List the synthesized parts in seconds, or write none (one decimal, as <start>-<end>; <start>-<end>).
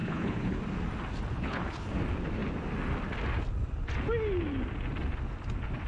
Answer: 0.0-0.6; 1.3-2.0